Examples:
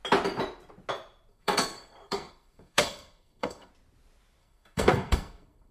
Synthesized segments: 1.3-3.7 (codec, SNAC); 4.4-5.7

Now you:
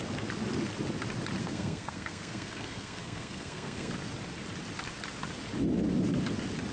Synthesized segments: 1.4-3.9 (codec, SNAC)

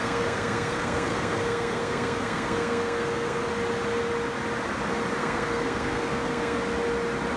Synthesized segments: 0.0-3.5 (codec, SNAC); 5.2-6.6

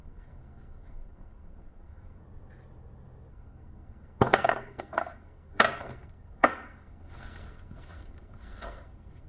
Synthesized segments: 0.0-2.2 (codec, SNAC); 3.3-9.3

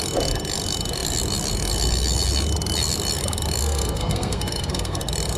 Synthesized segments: 3.6-5.0 (codec, SNAC)

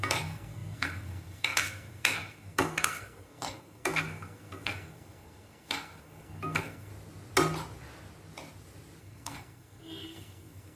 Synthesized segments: 0.0-6.9 (codec, SNAC); 9.0-10.8

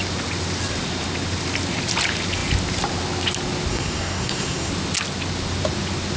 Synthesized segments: 3.7-4.7 (codec, SNAC)

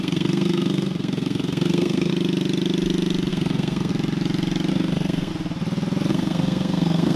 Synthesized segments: 0.0-2.1 (codec, SNAC); 3.3-3.9; 4.7-5.3; 6.1-7.2